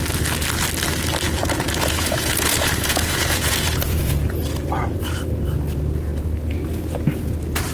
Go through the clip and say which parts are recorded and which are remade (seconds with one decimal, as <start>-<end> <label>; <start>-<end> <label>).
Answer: 0.0-1.4 recorded; 1.4-4.0 remade; 4.0-7.7 recorded